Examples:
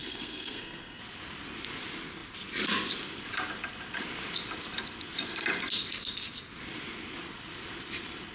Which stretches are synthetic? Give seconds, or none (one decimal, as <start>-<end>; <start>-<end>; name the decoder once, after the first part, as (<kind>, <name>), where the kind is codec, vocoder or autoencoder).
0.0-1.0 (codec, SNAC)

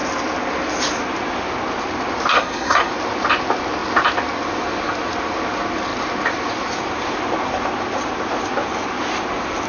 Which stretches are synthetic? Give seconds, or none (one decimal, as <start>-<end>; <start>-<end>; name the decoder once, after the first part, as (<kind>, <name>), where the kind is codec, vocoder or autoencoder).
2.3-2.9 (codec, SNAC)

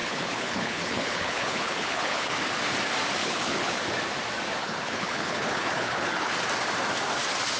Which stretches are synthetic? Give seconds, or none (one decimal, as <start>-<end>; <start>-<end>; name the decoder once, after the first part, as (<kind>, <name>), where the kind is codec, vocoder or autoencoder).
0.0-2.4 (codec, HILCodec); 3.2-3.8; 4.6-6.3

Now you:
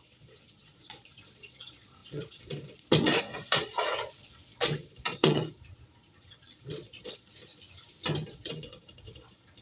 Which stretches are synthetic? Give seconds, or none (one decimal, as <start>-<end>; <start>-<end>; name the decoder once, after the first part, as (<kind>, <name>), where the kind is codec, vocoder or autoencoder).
0.0-7.4 (vocoder, Vocos); 8.3-9.6

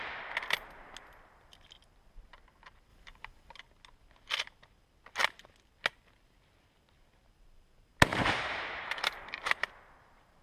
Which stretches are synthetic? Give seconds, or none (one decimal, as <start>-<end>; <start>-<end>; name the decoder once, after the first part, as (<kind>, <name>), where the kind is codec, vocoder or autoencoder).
2.9-3.6 (vocoder, BigVGAN v2); 8.1-9.5

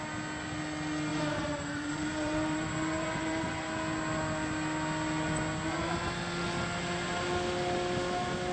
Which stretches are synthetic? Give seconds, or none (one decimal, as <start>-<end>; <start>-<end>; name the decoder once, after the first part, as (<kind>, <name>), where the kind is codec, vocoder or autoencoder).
1.1-3.6 (vocoder, BigVGAN v2)